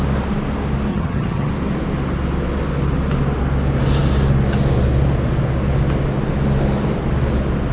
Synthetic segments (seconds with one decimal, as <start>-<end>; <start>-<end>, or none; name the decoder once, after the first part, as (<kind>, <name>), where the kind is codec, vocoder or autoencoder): 0.9-1.5 (vocoder, HiFi-GAN)

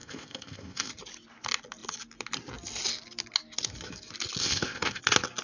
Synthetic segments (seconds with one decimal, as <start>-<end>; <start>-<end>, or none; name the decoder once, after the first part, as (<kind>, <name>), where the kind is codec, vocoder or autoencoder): 0.0-0.9 (codec, ZipCodec); 4.4-5.0

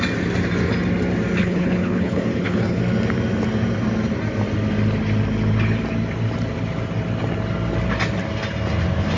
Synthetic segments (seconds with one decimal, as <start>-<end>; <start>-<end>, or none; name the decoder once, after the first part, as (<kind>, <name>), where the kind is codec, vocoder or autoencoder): 1.4-2.8 (codec, HILCodec)

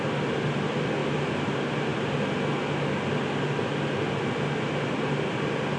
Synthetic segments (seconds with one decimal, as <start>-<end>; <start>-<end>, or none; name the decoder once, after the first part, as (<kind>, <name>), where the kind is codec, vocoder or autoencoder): 1.0-1.5 (vocoder, BigVGAN v2)